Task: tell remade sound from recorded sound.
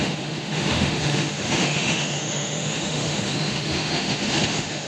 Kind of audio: remade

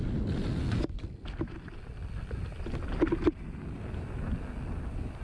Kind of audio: recorded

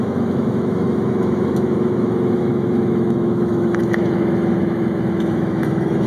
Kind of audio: remade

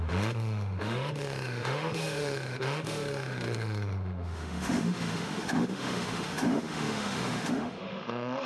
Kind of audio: remade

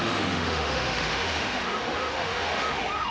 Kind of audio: remade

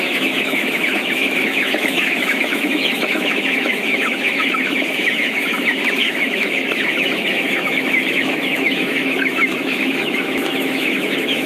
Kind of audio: remade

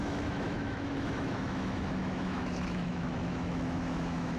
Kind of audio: remade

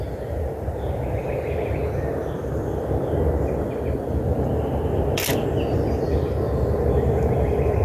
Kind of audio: recorded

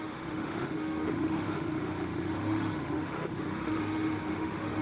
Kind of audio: remade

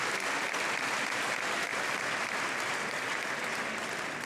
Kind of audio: recorded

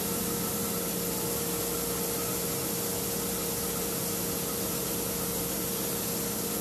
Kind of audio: recorded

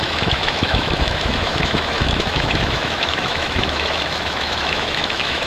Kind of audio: remade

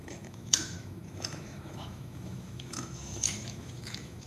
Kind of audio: remade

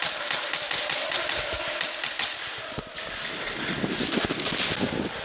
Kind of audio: recorded